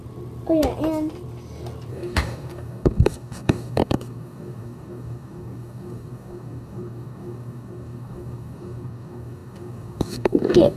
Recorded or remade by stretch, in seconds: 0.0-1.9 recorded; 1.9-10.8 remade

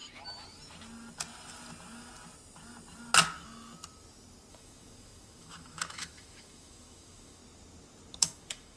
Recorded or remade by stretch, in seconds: 0.0-4.5 recorded; 4.5-7.4 remade; 7.4-8.2 recorded; 8.2-8.8 remade